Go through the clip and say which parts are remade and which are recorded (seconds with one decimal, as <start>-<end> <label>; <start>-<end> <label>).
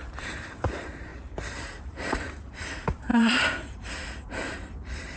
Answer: 0.0-1.1 remade; 1.1-1.9 recorded; 1.9-5.2 remade